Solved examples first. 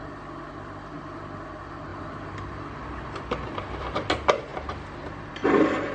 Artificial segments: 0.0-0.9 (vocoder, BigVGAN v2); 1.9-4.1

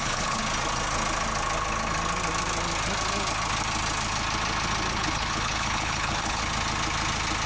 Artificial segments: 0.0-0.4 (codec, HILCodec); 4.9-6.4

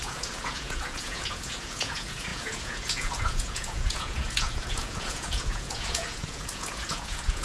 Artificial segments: 0.0-7.4 (vocoder, Vocos)

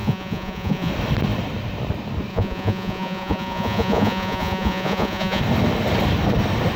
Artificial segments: 0.0-0.9 (vocoder, Vocos); 2.3-5.4

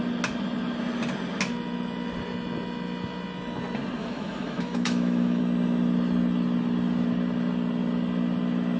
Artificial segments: 4.0-5.4 (autoencoder, DAC-VAE)